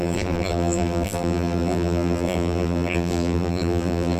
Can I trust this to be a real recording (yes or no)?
no